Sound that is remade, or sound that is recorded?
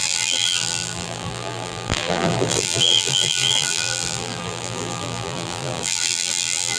remade